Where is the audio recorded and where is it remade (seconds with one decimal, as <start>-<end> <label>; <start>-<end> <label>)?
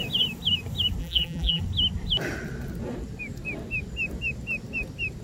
0.0-1.0 recorded; 1.0-1.6 remade; 1.6-5.2 recorded